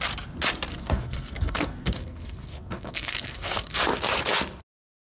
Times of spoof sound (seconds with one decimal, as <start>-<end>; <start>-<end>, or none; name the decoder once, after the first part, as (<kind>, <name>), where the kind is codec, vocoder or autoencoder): 0.7-3.8 (codec, SNAC)